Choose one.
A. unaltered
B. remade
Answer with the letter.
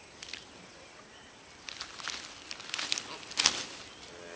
A